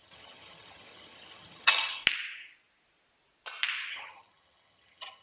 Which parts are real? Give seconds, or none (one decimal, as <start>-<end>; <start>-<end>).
2.0-3.9